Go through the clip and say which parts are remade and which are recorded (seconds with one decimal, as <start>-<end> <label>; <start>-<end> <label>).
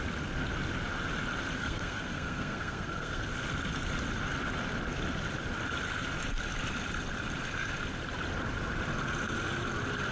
0.0-1.6 recorded; 1.6-3.3 remade; 3.3-10.1 recorded